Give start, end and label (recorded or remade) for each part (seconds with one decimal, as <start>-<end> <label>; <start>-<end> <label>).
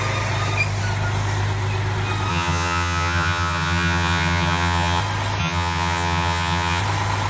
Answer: 0.0-2.3 recorded; 2.3-5.0 remade; 5.0-5.4 recorded; 5.4-6.8 remade; 6.8-7.3 recorded